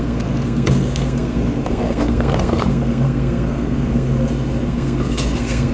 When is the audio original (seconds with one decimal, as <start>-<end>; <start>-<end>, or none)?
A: none

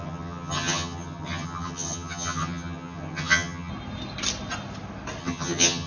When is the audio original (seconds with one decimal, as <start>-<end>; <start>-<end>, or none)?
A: 3.7-5.2

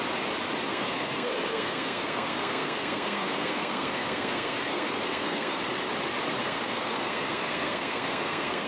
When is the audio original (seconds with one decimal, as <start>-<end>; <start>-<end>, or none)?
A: 0.0-0.7; 5.6-6.4

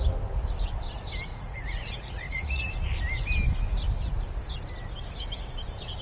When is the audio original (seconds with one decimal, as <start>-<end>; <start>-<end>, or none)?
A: 0.0-1.3; 2.7-6.0

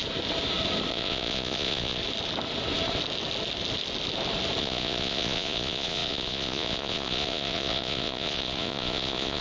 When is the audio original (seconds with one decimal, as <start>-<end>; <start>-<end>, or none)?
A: 0.0-0.9; 2.0-4.6

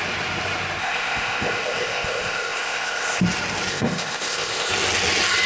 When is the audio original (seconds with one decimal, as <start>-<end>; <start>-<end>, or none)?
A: 0.0-0.8; 3.2-3.7; 4.7-5.5

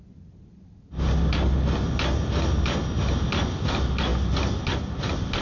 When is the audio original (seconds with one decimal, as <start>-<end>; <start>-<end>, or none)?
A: 0.0-5.4

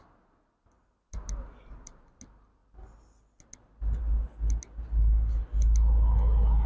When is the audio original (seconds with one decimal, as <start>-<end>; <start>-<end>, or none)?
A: 0.0-6.7